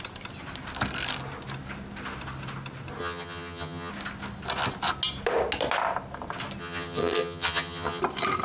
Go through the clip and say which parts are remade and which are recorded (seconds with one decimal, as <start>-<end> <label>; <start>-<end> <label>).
0.0-3.0 recorded; 3.0-3.9 remade; 3.9-6.6 recorded; 6.6-8.0 remade; 8.0-8.4 recorded